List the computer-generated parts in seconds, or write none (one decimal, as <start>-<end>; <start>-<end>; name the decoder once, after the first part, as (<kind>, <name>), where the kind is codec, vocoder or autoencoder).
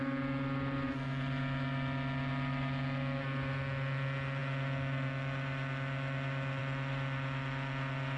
none